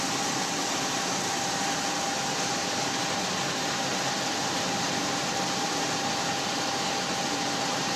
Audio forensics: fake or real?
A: real